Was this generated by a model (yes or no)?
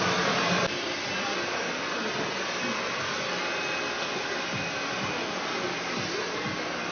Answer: no